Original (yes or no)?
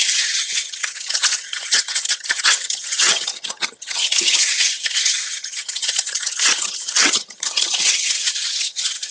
no